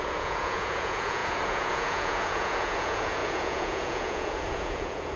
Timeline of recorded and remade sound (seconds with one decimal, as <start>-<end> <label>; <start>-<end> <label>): 0.0-5.2 remade